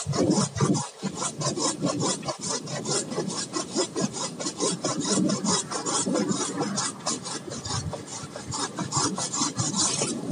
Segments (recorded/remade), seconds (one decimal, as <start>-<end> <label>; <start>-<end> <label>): 0.0-8.1 recorded; 8.1-8.9 remade; 8.9-10.3 recorded